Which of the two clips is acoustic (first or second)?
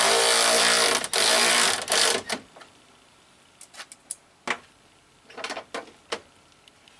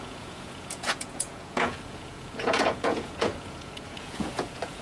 first